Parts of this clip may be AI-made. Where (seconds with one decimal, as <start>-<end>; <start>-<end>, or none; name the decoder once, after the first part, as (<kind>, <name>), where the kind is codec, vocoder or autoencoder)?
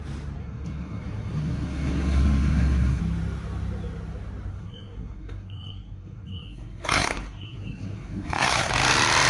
0.4-3.0 (codec, SNAC); 4.5-8.7